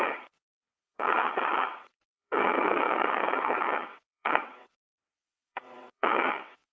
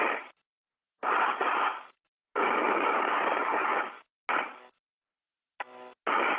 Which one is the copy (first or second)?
first